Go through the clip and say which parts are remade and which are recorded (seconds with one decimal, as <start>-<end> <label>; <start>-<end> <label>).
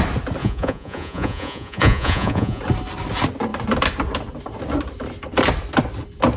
0.0-0.4 recorded; 0.4-2.6 remade; 2.6-6.4 recorded